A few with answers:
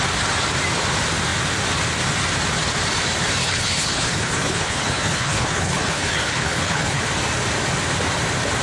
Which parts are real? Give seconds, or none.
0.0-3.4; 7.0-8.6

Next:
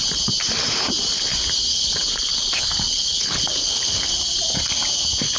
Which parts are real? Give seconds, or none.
0.0-1.7; 4.1-5.4

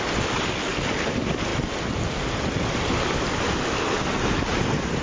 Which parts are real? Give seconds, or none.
0.0-5.0

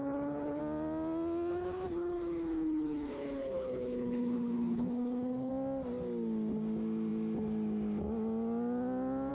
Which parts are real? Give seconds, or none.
0.6-1.5; 5.5-9.3